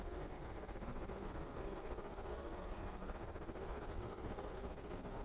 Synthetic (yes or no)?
yes